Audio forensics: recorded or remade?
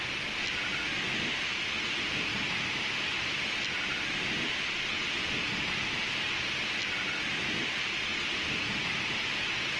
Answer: recorded